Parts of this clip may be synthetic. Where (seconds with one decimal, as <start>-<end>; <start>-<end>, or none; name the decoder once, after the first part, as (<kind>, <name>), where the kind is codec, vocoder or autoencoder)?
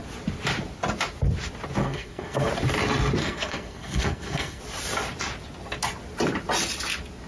1.8-2.5 (codec, SNAC); 3.2-4.6